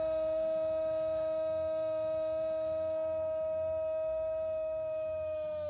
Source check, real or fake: fake